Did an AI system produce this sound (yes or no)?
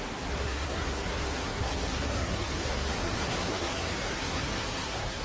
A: yes